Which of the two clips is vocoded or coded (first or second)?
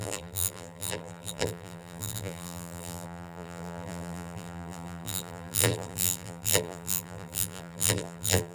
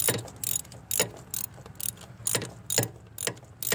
first